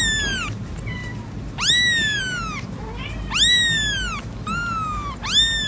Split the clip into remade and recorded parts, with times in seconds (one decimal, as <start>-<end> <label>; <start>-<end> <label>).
0.0-5.7 recorded

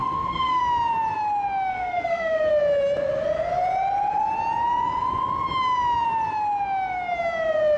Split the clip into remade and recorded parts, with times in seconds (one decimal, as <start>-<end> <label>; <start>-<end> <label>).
0.0-0.6 remade; 0.6-1.7 recorded; 1.7-2.5 remade; 2.5-7.8 recorded